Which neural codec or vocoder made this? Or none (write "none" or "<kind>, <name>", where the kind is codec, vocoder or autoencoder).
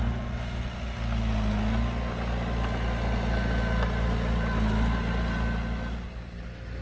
none